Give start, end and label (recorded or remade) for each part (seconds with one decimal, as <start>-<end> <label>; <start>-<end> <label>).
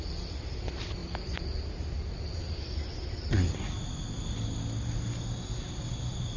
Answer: 0.0-6.4 recorded